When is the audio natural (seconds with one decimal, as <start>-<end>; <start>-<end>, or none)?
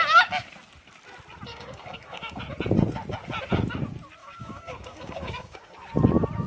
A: 0.0-1.5; 2.4-4.2; 5.7-6.5